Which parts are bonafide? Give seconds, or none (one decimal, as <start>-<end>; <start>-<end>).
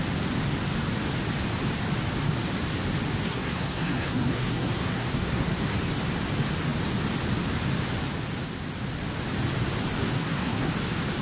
0.0-3.2; 5.6-10.0; 10.7-11.2